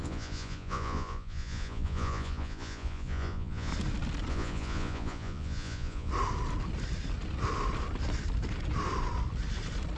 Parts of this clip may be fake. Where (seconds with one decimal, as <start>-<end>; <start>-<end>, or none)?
0.0-3.7; 4.3-6.1